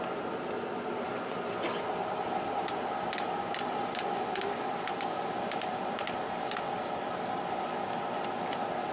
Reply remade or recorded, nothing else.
recorded